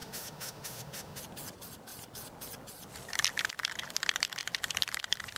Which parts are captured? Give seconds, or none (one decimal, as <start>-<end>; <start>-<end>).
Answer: 1.2-5.4